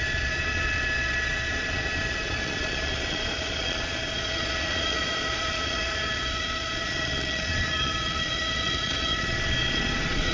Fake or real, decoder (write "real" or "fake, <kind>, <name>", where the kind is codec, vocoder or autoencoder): fake, vocoder, Vocos